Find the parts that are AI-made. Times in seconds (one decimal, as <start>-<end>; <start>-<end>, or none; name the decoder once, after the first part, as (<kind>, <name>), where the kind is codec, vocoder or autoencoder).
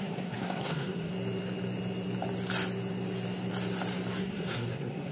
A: 0.0-1.1 (codec, SNAC); 4.2-5.1